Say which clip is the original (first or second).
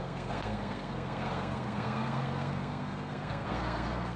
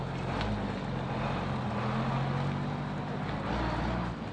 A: second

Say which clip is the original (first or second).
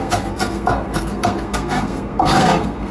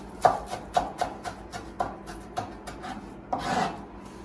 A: second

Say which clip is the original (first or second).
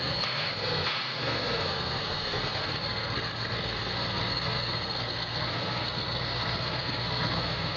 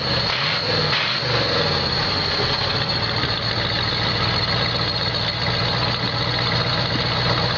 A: second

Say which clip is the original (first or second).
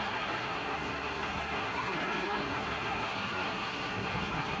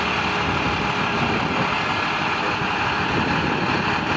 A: second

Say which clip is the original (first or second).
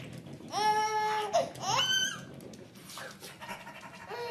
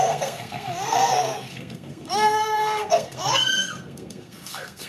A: first